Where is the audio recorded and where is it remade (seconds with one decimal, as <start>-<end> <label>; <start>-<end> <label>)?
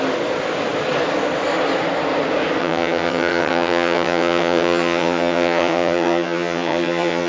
0.0-2.6 recorded; 2.6-7.3 remade